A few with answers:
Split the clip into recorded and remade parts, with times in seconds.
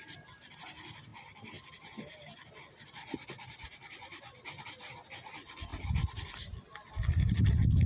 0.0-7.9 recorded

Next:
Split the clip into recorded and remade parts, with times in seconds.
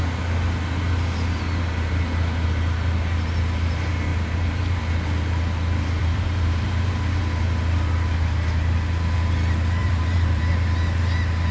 0.0-4.1 recorded; 4.1-4.8 remade; 4.8-6.0 recorded; 6.0-7.2 remade; 7.2-9.8 recorded; 9.8-10.4 remade; 10.4-11.5 recorded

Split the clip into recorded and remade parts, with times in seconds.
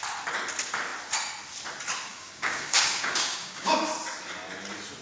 0.0-2.1 recorded; 2.1-3.8 remade; 3.8-5.0 recorded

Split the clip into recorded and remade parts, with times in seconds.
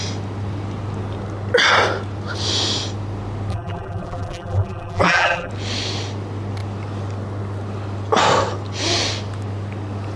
0.0-3.5 recorded; 3.5-5.5 remade; 5.5-10.2 recorded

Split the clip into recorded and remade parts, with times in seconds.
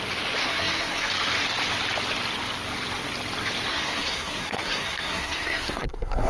0.0-0.4 recorded; 0.4-1.1 remade; 1.1-3.7 recorded; 3.7-6.3 remade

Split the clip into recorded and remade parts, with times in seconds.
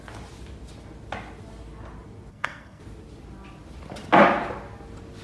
0.0-2.3 recorded; 2.3-2.8 remade; 2.8-5.2 recorded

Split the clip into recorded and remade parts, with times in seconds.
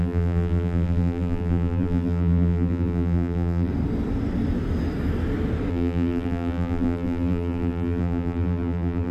0.0-3.7 remade; 3.7-5.7 recorded; 5.7-9.1 remade